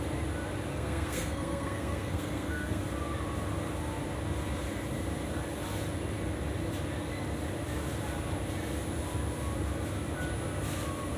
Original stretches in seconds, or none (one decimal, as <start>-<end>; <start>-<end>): 0.0-0.7; 2.8-11.2